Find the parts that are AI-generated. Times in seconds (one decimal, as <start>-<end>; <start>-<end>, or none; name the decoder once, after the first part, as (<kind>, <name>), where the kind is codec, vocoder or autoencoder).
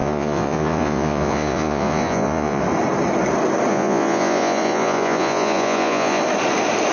0.0-2.6 (vocoder, Vocos); 3.7-6.2